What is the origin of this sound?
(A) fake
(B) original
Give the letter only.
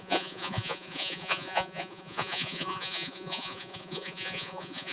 A